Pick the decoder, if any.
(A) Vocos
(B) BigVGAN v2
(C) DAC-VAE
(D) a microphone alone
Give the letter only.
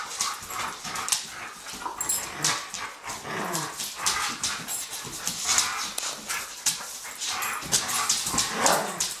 D